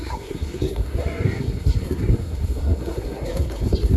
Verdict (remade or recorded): remade